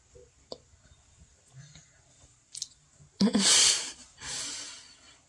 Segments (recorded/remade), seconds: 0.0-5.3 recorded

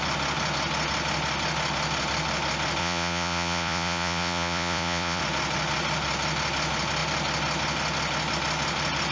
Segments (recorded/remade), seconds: 0.0-2.8 recorded; 2.8-5.2 remade; 5.2-9.1 recorded

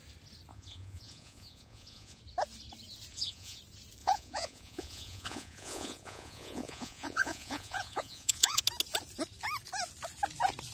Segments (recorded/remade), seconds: 0.0-0.5 recorded; 0.5-2.2 remade; 2.2-3.1 recorded; 3.1-3.6 remade; 3.6-4.0 recorded; 4.0-8.6 remade; 8.6-10.7 recorded

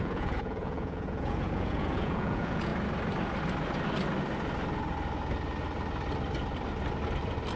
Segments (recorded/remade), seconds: 0.0-2.7 remade; 2.7-7.6 recorded

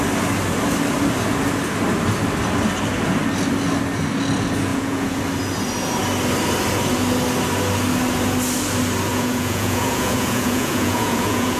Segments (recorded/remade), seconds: 0.0-4.7 recorded; 4.7-5.2 remade; 5.2-9.1 recorded; 9.1-11.6 remade

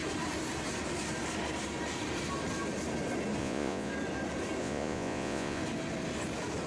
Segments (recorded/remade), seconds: 0.0-3.4 recorded; 3.4-3.9 remade; 3.9-4.6 recorded; 4.6-5.6 remade; 5.6-6.7 recorded

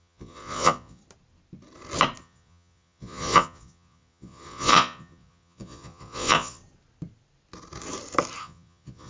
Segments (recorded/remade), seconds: 0.0-1.0 remade; 1.0-2.2 recorded; 2.2-6.6 remade; 6.6-8.4 recorded; 8.4-9.1 remade